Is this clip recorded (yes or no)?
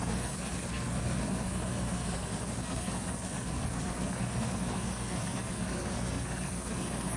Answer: no